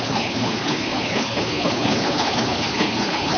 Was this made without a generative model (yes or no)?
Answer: no